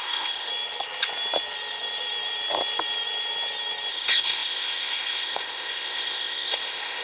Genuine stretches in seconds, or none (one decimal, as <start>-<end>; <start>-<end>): 0.5-3.9